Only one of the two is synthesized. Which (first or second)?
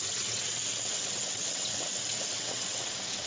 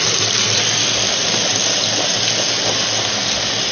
first